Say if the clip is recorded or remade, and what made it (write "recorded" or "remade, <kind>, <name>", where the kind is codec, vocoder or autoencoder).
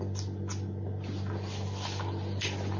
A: recorded